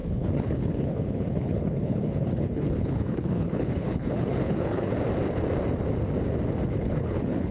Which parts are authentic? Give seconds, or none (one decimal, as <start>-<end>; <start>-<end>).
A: 4.9-6.7